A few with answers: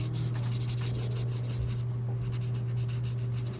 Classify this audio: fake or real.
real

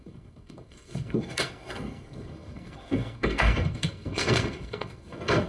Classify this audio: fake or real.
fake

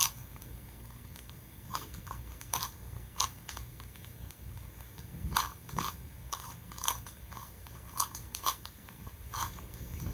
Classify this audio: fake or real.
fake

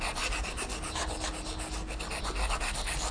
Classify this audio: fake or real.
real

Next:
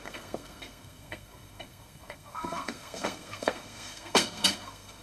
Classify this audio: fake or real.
fake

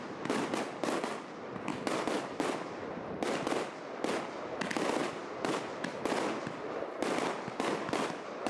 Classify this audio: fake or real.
real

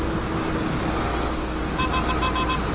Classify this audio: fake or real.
real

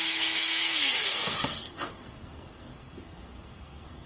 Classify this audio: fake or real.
fake